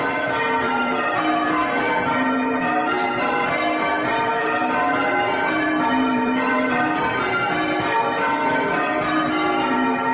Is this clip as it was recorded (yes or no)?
no